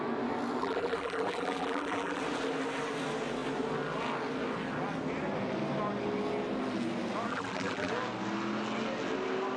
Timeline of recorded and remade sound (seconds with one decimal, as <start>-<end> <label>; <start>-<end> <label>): 0.0-0.6 recorded; 0.6-2.2 remade; 2.2-7.3 recorded; 7.3-7.9 remade; 7.9-9.6 recorded